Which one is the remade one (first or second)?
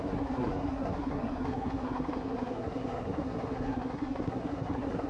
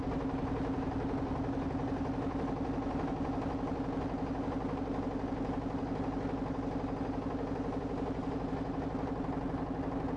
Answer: first